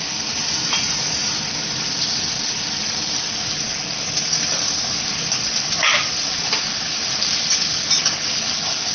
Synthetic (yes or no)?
no